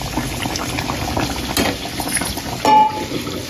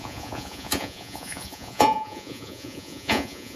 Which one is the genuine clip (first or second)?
first